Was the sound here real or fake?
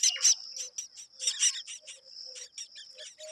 real